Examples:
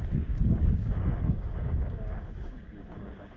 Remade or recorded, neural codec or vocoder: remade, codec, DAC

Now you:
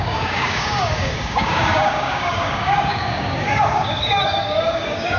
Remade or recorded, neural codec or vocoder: remade, codec, DAC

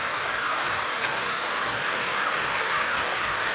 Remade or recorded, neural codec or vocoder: remade, codec, DAC